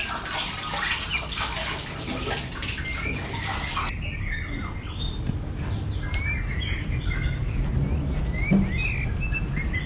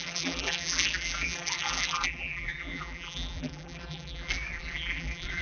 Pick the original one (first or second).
first